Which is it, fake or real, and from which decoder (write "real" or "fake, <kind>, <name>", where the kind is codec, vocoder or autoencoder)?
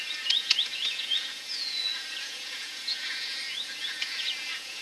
fake, vocoder, Vocos